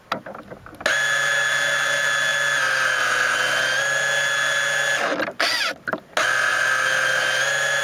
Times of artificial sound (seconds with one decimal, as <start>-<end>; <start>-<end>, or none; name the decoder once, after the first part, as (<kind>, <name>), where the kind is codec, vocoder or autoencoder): none